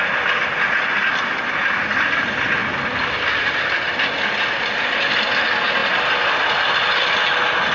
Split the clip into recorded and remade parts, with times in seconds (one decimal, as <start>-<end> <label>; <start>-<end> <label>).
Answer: 0.0-7.7 recorded